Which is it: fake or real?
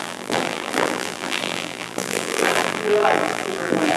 fake